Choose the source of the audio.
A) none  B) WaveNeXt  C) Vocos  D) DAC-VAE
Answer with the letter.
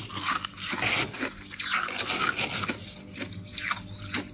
A